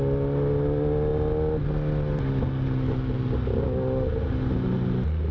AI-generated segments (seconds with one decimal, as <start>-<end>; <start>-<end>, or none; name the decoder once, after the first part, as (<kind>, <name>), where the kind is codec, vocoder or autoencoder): none